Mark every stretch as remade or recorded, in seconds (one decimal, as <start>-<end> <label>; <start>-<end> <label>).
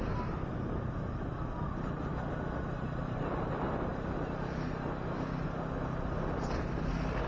0.0-7.3 recorded